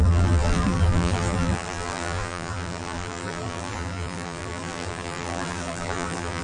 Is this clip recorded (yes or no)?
no